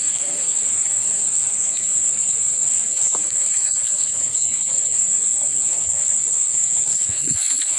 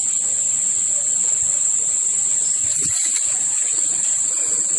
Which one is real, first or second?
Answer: second